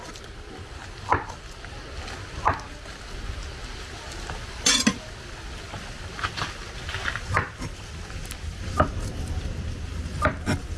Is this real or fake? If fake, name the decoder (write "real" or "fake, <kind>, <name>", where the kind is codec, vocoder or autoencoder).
real